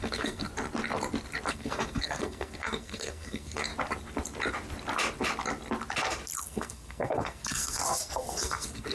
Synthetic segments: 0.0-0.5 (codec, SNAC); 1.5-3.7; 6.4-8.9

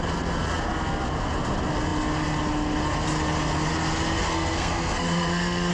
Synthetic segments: 4.3-5.7 (codec, SNAC)